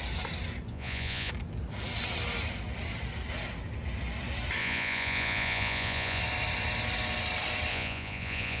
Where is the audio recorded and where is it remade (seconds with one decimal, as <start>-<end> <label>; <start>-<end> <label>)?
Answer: 0.0-0.7 recorded; 0.7-1.3 remade; 1.3-4.6 recorded; 4.6-6.2 remade; 6.2-7.7 recorded; 7.7-8.6 remade